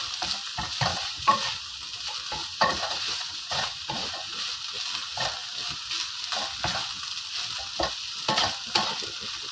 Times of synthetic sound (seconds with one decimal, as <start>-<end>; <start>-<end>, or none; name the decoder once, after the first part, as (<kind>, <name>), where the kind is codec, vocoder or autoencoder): 0.9-1.5 (vocoder, Vocos); 2.4-4.4